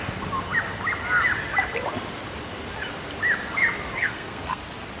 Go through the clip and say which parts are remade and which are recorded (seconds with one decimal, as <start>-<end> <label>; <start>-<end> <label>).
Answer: 0.0-4.0 recorded; 4.0-4.6 remade; 4.6-5.0 recorded